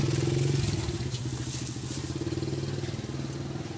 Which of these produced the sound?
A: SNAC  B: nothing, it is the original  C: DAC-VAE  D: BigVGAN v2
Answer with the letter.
B